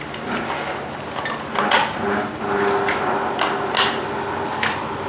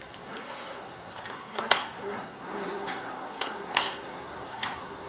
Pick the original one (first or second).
first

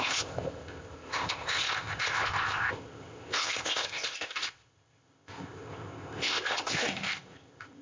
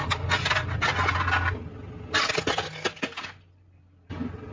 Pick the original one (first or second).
second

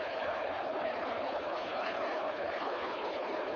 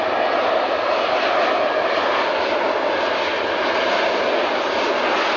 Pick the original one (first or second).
second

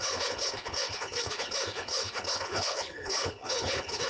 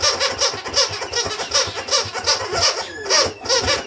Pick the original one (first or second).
second